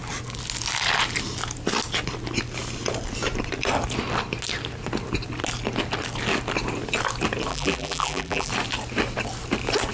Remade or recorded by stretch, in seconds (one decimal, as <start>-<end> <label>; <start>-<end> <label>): 0.0-7.5 recorded; 7.5-8.5 remade; 8.5-9.9 recorded